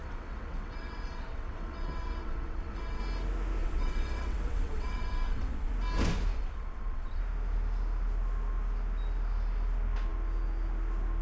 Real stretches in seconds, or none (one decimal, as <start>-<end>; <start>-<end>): 3.0-3.6; 5.7-6.3; 7.2-11.2